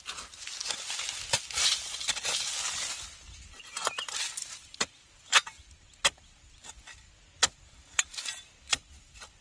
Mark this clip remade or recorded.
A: recorded